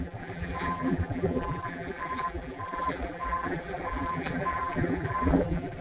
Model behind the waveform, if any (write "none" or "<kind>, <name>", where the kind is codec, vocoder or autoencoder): vocoder, BigVGAN v2